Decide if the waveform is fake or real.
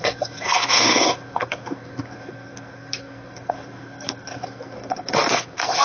fake